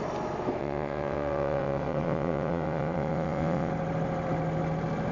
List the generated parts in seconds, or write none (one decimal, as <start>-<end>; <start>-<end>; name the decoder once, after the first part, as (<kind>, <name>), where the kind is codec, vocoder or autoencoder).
0.6-3.7 (vocoder, WaveNeXt)